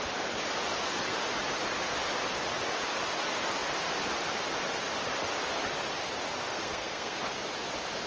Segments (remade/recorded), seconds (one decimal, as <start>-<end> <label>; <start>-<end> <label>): 0.0-6.5 recorded; 6.5-7.2 remade; 7.2-8.1 recorded